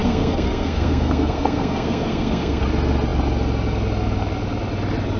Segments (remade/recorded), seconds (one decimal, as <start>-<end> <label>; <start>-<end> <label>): 0.0-2.6 remade; 2.6-5.2 recorded